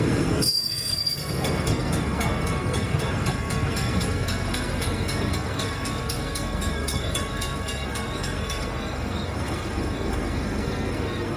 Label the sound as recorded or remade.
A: remade